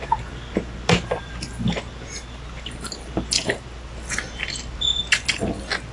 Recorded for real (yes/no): yes